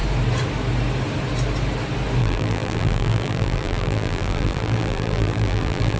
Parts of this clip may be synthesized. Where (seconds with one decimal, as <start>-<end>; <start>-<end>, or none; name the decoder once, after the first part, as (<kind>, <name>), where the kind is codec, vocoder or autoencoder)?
2.2-6.0 (vocoder, BigVGAN v2)